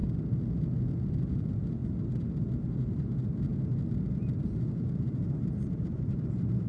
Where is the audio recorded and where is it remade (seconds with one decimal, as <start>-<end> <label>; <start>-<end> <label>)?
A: 0.0-1.1 recorded; 1.1-1.8 remade; 1.8-2.5 recorded; 2.5-3.5 remade; 3.5-4.1 recorded; 4.1-6.7 remade